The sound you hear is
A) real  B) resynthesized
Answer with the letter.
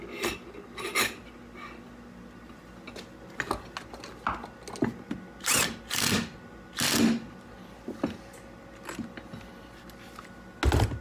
A